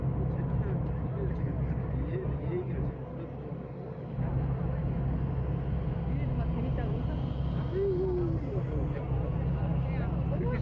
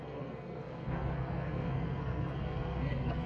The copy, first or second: second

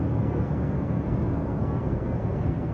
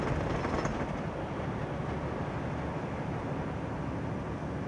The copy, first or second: first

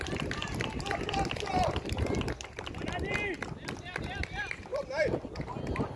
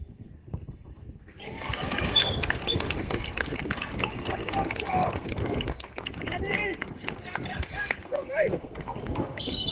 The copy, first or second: second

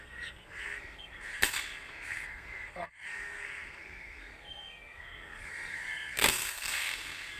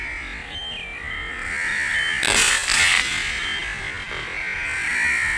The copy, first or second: first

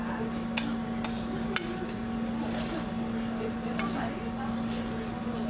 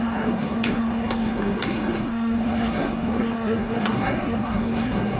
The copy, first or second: second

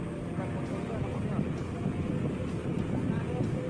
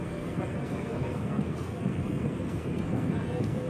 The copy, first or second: second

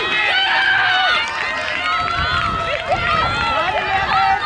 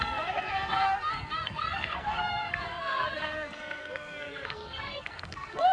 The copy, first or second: second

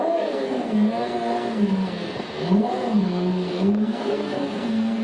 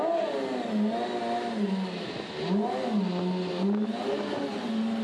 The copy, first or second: first